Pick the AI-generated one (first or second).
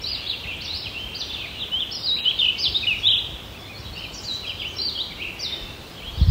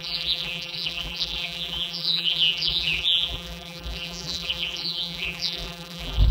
second